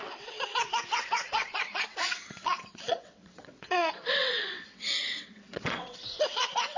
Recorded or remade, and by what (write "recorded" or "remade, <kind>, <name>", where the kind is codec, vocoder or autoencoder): remade, vocoder, WaveNeXt